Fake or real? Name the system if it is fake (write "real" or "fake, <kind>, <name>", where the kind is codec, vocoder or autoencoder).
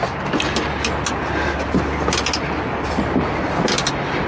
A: real